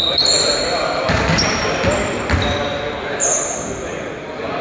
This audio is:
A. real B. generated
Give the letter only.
A